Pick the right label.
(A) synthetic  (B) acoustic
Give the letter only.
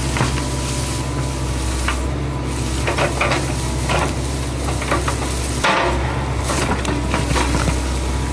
B